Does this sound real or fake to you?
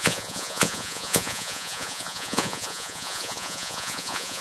fake